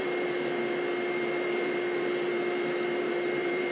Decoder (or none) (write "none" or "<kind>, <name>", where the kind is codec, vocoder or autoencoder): vocoder, BigVGAN v2